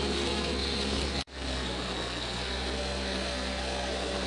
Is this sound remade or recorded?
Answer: remade